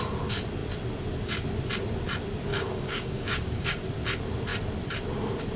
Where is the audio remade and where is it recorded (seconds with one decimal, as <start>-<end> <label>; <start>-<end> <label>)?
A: 0.0-2.5 recorded; 2.5-3.8 remade; 3.8-5.6 recorded